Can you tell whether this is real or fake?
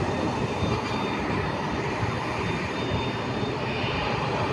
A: fake